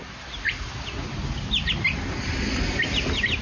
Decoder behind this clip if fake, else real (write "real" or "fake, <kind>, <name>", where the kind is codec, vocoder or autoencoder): real